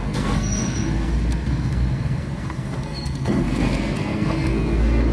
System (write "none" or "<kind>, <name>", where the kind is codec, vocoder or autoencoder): codec, SNAC